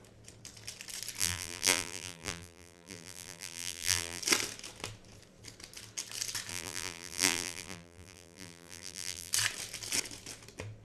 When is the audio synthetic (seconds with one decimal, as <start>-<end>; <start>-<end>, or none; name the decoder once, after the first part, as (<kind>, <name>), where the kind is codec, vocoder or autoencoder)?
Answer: 1.2-4.2 (vocoder, BigVGAN v2); 6.5-9.3